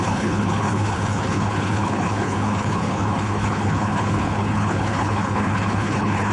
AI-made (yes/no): yes